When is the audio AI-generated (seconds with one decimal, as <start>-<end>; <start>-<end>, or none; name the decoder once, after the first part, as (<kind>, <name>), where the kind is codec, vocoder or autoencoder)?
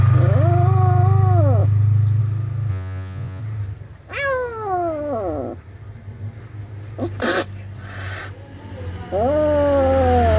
2.7-3.4 (vocoder, Vocos)